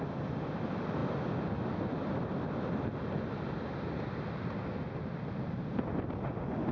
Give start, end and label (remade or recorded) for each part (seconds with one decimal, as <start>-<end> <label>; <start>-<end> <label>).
0.0-6.7 recorded